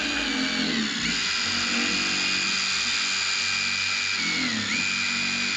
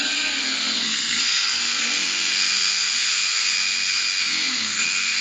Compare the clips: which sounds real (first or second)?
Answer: first